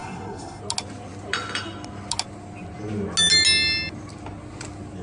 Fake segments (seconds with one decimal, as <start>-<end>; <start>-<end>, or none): 0.0-0.6